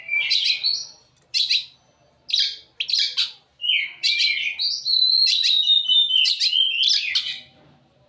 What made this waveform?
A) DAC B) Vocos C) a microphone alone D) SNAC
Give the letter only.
C